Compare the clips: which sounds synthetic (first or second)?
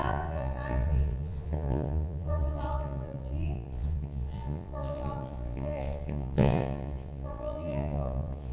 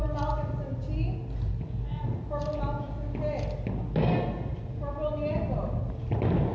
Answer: first